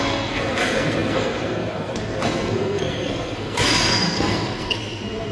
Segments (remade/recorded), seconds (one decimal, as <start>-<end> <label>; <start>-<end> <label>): 0.0-5.3 remade